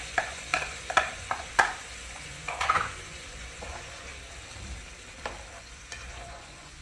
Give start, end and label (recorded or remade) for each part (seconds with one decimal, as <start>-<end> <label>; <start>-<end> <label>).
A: 0.0-4.1 remade; 4.1-5.6 recorded; 5.6-6.8 remade